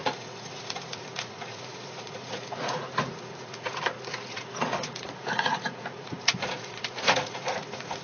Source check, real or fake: fake